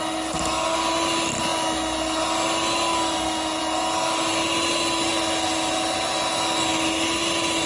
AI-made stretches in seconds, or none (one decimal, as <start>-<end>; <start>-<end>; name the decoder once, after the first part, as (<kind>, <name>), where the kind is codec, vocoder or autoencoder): none